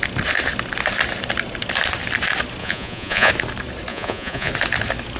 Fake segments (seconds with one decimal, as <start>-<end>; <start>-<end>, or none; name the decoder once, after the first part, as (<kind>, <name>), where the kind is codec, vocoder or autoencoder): 2.6-3.3 (vocoder, Vocos); 3.9-4.5